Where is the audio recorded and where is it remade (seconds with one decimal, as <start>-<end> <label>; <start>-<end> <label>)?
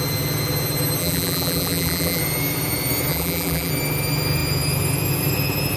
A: 0.0-1.0 recorded; 1.0-2.2 remade; 2.2-3.1 recorded; 3.1-3.7 remade; 3.7-5.8 recorded